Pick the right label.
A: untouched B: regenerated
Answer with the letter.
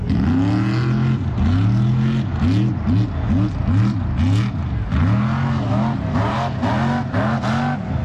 A